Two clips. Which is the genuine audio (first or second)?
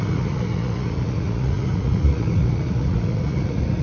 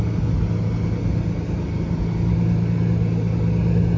second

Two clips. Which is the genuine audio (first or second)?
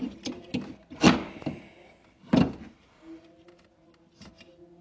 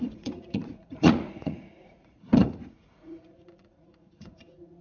first